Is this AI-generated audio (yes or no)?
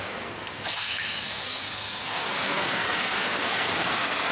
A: yes